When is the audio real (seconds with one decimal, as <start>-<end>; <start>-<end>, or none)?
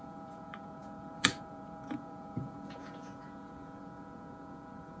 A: none